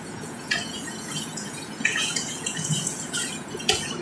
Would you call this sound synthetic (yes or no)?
yes